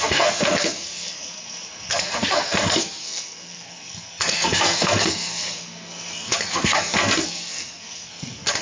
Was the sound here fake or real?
fake